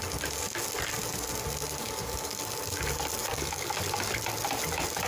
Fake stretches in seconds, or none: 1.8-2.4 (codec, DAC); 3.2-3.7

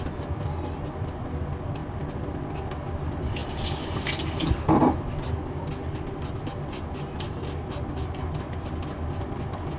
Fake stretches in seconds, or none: none

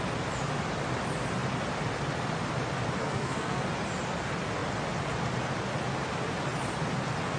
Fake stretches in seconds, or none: 3.0-3.6 (codec, SNAC)

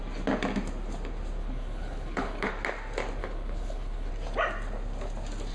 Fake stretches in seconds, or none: 1.4-2.5 (codec, HILCodec); 3.2-4.1

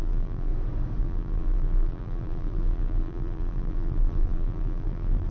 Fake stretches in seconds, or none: 0.0-0.5 (vocoder, BigVGAN v2); 1.0-5.3

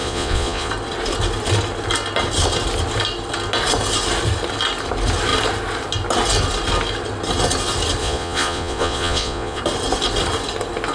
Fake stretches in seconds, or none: 0.0-0.7 (vocoder, Vocos); 8.0-9.6

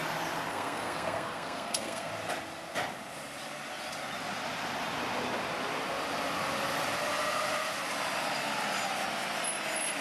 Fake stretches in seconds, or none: 0.5-2.1 (codec, SNAC)